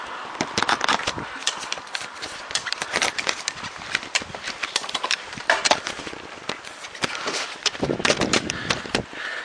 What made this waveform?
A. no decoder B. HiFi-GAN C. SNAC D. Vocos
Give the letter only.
A